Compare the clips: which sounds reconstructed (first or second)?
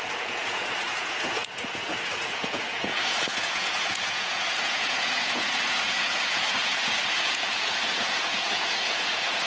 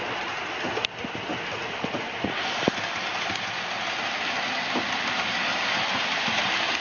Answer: first